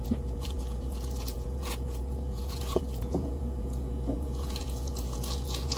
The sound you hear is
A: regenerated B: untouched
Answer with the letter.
A